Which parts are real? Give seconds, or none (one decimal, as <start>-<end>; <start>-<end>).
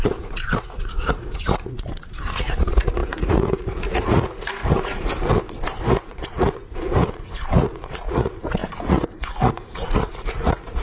5.1-5.9